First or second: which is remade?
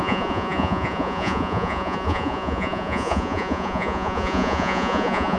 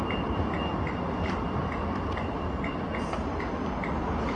first